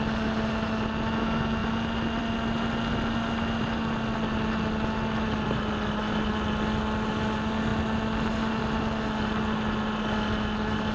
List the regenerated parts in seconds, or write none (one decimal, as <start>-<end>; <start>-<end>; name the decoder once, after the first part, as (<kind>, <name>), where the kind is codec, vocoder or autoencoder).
none